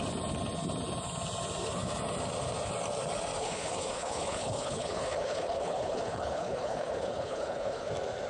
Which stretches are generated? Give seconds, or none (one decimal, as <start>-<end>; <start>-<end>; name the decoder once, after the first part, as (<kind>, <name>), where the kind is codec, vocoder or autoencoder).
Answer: 3.4-7.9 (codec, HILCodec)